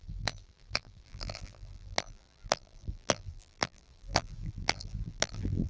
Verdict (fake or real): fake